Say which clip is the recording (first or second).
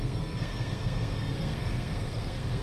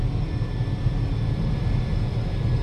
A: second